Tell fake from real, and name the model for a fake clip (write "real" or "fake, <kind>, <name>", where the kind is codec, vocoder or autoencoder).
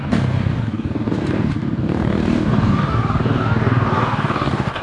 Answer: fake, codec, DAC